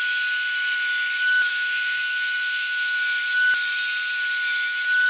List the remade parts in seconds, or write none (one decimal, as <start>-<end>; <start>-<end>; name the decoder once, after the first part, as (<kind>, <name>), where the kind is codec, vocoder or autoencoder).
1.5-3.2 (codec, SNAC)